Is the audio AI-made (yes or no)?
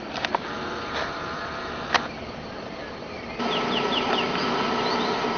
no